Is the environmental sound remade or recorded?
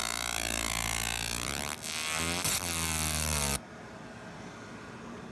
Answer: recorded